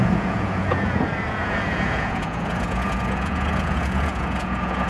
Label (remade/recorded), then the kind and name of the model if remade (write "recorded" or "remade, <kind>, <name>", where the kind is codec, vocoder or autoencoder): remade, vocoder, Vocos